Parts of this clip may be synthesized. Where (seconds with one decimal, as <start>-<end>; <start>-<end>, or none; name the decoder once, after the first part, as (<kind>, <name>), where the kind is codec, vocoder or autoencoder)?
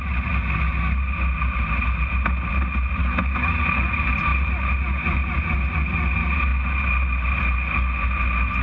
3.0-3.6 (autoencoder, DAC-VAE)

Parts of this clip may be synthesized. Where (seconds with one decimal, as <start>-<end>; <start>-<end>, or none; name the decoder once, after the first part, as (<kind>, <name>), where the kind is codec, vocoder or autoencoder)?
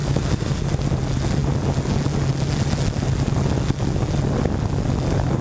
0.0-0.6 (codec, SNAC)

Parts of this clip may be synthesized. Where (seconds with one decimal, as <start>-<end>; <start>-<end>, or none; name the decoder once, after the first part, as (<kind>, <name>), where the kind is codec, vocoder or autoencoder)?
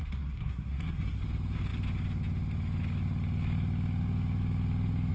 0.0-1.2 (codec, SNAC)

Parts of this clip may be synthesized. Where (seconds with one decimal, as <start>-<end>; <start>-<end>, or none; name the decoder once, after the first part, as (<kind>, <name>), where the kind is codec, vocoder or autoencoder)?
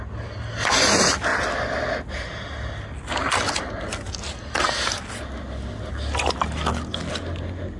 none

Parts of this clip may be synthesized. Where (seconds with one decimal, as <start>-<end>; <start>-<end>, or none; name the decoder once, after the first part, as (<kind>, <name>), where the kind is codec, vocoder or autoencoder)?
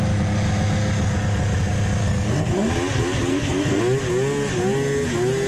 2.0-2.7 (codec, SNAC); 3.3-3.8